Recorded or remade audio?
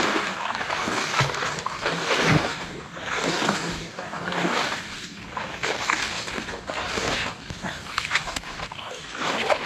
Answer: remade